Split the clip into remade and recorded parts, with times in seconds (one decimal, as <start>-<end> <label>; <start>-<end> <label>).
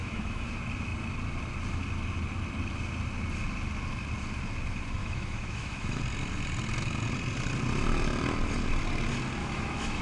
0.0-0.5 remade; 0.5-5.0 recorded; 5.0-6.0 remade; 6.0-9.4 recorded; 9.4-10.0 remade